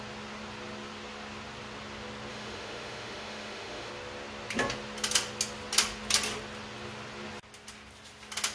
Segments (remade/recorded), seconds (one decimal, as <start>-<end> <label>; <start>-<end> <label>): 0.0-2.3 recorded; 2.3-3.9 remade; 3.9-8.5 recorded